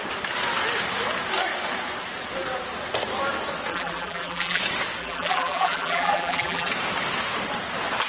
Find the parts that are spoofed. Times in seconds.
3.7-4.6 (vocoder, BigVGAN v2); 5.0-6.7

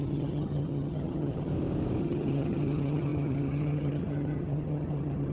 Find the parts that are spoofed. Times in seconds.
0.0-1.5 (vocoder, HiFi-GAN); 2.0-5.3

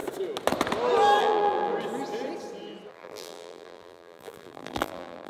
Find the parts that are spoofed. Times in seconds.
1.2-1.7 (vocoder, BigVGAN v2); 2.9-5.3